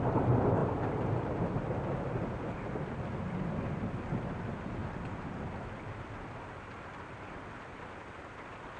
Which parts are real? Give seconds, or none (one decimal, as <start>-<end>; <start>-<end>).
0.0-0.6; 1.1-4.8; 5.5-8.8